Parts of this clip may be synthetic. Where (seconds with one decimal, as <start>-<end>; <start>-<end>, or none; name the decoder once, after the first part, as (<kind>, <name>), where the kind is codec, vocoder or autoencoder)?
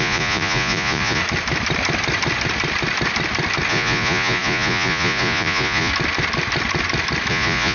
0.0-1.2 (vocoder, Vocos); 3.7-5.9; 7.3-7.7